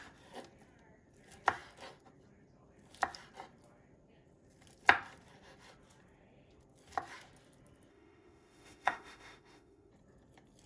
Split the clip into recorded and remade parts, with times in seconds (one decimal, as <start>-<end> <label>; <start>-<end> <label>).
0.0-7.9 recorded; 7.9-9.9 remade; 9.9-10.7 recorded